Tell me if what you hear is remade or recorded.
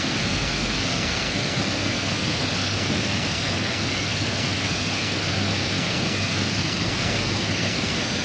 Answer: remade